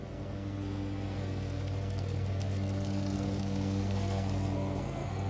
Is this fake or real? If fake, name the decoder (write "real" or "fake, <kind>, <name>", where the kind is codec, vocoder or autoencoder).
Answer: fake, codec, SNAC